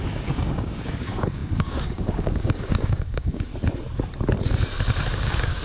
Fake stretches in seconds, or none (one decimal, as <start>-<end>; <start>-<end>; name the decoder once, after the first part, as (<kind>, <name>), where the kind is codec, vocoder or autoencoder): 0.0-3.5 (codec, DAC); 5.1-5.6